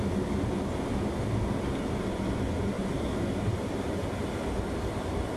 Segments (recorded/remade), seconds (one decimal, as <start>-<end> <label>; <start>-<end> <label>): 0.0-5.4 recorded